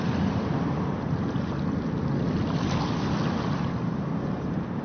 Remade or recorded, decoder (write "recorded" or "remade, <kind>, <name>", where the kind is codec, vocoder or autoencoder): recorded